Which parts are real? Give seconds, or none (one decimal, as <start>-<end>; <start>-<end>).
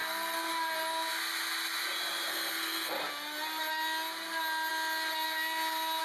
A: 0.5-2.3; 2.9-6.0